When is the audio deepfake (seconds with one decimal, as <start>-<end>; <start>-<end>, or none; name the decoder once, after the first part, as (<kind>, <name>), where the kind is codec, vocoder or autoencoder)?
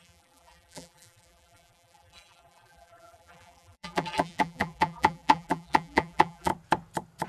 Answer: 0.0-6.5 (vocoder, BigVGAN v2)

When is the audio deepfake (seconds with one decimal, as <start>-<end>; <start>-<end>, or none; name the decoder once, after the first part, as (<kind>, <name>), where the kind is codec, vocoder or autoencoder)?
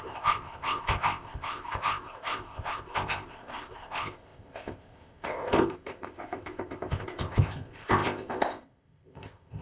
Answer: 0.0-9.6 (codec, ZipCodec)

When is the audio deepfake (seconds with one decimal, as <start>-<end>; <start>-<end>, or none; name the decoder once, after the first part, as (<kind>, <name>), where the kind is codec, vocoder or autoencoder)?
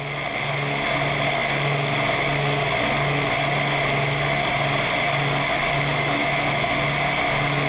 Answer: 6.2-6.7 (autoencoder, DAC-VAE)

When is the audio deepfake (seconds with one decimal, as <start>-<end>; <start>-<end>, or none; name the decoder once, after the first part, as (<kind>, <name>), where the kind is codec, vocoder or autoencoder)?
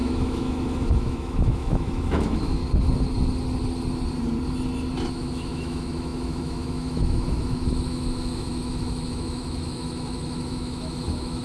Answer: 0.0-2.6 (autoencoder, DAC-VAE); 5.1-11.4